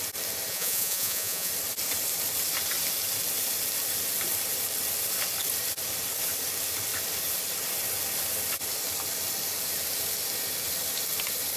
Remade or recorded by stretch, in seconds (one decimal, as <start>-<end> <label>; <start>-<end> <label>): 0.0-0.5 recorded; 0.5-1.5 remade; 1.5-11.6 recorded